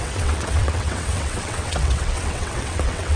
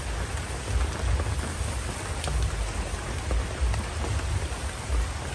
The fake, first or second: first